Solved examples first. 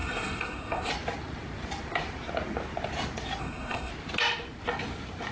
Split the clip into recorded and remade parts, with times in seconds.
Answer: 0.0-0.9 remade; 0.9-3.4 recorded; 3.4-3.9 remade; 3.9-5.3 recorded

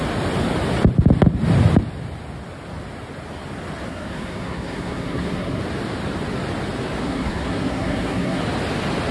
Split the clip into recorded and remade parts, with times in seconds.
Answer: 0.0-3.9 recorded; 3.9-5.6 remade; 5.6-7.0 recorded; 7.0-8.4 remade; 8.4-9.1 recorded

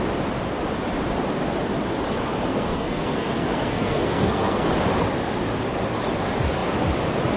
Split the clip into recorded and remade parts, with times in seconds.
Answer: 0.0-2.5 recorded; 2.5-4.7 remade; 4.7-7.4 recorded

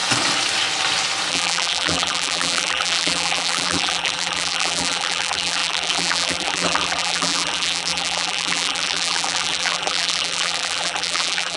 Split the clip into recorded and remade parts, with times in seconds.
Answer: 0.0-1.3 recorded; 1.3-11.6 remade

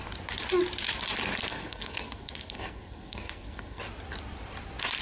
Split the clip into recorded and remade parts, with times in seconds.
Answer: 0.0-1.5 recorded; 1.5-3.8 remade; 3.8-5.0 recorded